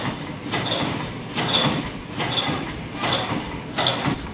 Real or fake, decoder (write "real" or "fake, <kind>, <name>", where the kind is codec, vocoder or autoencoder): real